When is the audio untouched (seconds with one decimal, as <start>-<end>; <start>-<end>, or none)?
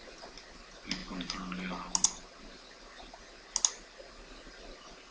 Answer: 0.0-5.1